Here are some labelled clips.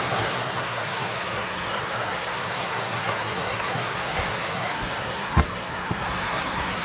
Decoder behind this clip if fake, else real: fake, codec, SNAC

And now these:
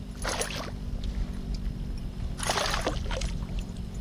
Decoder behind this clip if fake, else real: real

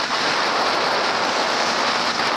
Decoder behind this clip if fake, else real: real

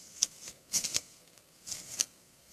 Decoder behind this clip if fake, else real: fake, codec, SNAC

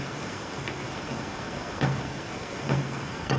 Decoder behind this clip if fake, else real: fake, codec, SNAC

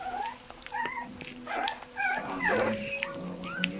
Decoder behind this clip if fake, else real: real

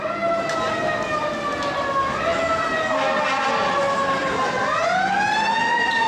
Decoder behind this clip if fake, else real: real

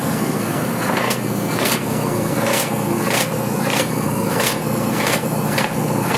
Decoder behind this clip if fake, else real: fake, codec, SNAC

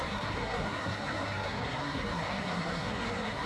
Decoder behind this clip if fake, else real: fake, codec, SNAC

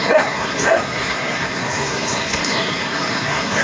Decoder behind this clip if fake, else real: fake, codec, SNAC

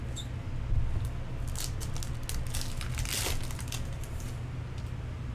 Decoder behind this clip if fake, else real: real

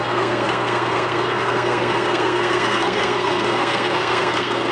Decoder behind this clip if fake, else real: fake, codec, SNAC